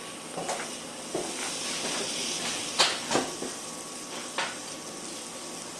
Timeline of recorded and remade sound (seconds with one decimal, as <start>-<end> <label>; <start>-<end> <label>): 0.0-5.8 recorded